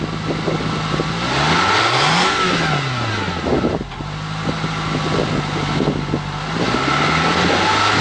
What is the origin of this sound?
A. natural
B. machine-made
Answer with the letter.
A